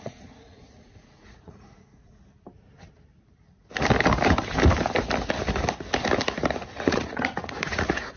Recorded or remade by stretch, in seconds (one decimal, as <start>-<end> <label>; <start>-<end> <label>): 0.0-2.2 remade; 2.2-6.8 recorded; 6.8-8.2 remade